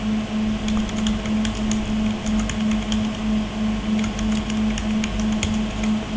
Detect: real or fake real